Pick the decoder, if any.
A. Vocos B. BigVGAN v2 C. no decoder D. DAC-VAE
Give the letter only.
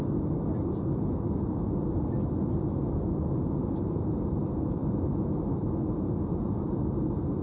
C